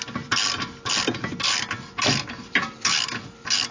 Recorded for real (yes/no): yes